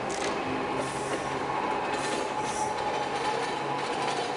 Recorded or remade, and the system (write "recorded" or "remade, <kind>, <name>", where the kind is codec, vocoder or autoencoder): recorded